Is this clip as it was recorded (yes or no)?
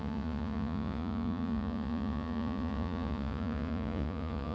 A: no